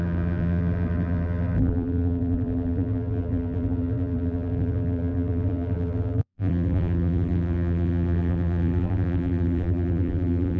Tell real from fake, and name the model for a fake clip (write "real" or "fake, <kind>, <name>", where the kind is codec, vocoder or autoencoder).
fake, vocoder, BigVGAN v2